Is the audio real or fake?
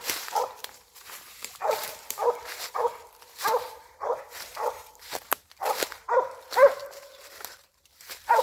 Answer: fake